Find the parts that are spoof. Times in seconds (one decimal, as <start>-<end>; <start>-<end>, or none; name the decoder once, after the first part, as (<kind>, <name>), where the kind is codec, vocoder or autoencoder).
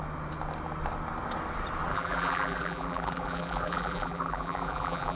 1.9-5.2 (vocoder, BigVGAN v2)